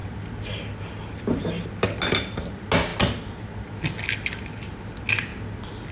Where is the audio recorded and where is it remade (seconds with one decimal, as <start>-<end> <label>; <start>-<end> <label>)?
0.0-5.9 recorded

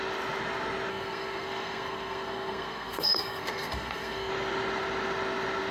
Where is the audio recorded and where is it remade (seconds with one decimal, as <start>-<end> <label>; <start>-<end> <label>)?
0.0-0.9 recorded; 0.9-4.3 remade; 4.3-5.7 recorded

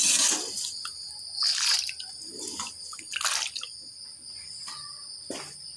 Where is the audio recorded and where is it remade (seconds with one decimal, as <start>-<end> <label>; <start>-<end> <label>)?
0.0-5.8 recorded

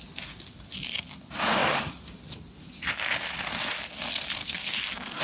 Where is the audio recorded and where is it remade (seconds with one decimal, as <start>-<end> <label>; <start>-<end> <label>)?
0.0-4.4 recorded; 4.4-5.2 remade

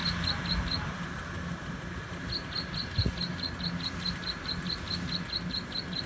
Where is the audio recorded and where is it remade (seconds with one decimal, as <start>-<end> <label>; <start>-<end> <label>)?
0.0-6.1 recorded

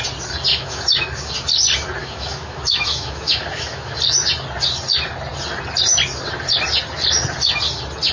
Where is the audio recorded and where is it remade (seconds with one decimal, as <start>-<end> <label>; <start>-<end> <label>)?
0.0-0.5 recorded; 0.5-1.3 remade; 1.3-2.0 recorded; 2.0-4.0 remade; 4.0-8.1 recorded